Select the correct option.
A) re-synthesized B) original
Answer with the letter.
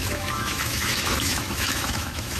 A